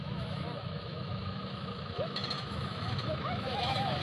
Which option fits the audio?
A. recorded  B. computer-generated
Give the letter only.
B